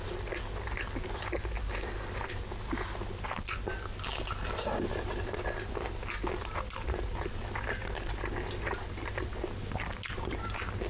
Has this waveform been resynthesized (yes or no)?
no